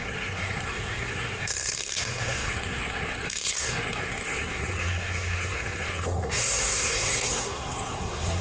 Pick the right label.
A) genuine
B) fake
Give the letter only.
B